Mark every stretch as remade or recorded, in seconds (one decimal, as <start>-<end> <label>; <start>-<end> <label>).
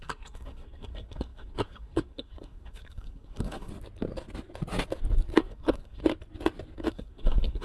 0.0-3.7 remade; 3.7-5.4 recorded; 5.4-6.0 remade; 6.0-6.9 recorded; 6.9-7.6 remade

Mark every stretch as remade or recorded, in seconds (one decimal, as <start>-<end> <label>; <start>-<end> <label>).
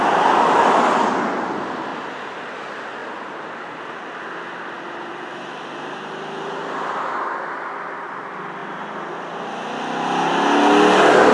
0.0-11.3 recorded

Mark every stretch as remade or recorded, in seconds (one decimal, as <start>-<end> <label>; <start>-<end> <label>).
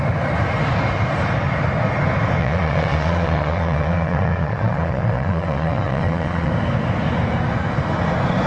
0.0-2.4 recorded; 2.4-6.5 remade; 6.5-8.5 recorded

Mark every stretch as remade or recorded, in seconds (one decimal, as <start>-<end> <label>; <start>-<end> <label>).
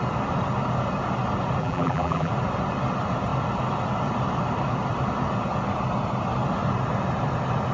0.0-1.6 recorded; 1.6-2.3 remade; 2.3-7.7 recorded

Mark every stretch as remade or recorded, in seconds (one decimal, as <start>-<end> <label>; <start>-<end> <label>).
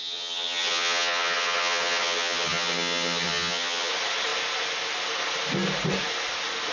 0.0-3.9 remade; 3.9-6.7 recorded